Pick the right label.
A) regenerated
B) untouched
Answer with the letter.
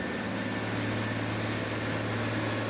B